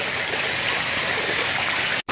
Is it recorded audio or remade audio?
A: recorded